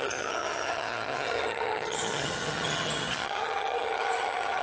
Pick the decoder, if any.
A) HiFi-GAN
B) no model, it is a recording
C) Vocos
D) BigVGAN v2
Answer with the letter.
A